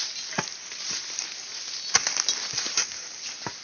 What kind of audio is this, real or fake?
real